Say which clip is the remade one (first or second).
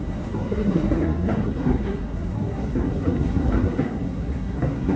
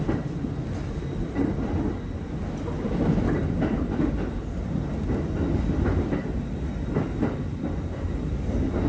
first